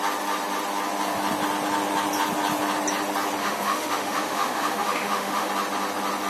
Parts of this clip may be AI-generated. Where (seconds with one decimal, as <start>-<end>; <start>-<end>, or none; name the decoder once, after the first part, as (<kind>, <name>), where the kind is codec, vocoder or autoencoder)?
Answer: 3.4-5.5 (autoencoder, DAC-VAE)